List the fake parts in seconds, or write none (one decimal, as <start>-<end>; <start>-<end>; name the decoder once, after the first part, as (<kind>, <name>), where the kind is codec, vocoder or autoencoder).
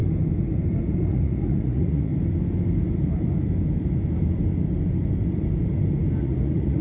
1.1-2.1 (vocoder, Vocos); 6.2-6.8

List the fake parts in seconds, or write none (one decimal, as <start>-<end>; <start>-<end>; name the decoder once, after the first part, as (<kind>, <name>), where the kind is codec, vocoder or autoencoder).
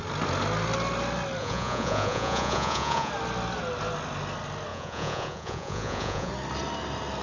1.4-3.1 (vocoder, Vocos); 4.7-6.3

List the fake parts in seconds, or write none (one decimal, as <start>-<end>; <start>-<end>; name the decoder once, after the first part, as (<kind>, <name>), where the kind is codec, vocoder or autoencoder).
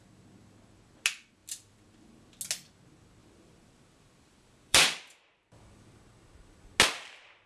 1.4-2.3 (vocoder, BigVGAN v2); 3.2-6.0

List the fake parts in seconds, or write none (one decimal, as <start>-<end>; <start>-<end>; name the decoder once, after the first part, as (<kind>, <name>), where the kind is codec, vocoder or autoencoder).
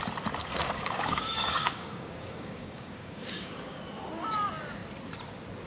0.4-3.8 (codec, DAC)